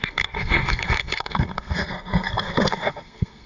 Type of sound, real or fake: fake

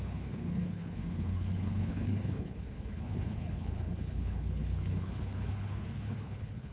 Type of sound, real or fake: fake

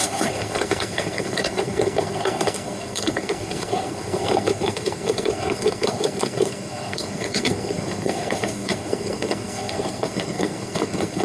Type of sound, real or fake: fake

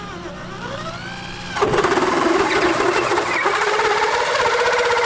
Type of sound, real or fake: real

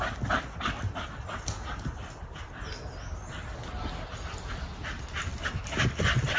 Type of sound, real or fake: real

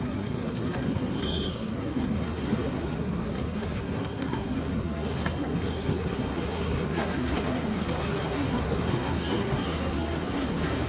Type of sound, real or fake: fake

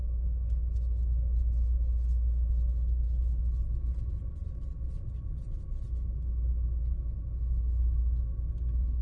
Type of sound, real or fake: real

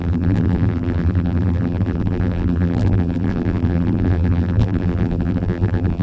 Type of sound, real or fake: fake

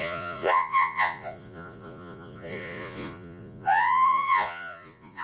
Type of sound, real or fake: fake